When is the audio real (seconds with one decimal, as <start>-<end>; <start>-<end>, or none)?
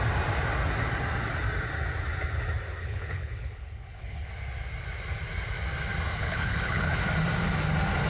0.0-2.8; 4.3-6.1; 7.0-8.1